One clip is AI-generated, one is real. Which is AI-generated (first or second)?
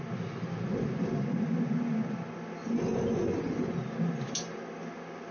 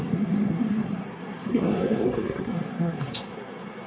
second